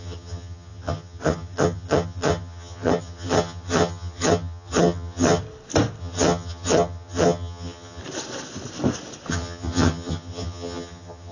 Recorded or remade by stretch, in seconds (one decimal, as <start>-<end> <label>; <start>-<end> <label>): 0.0-5.4 remade; 5.4-6.0 recorded; 6.0-8.0 remade; 8.0-9.3 recorded; 9.3-11.3 remade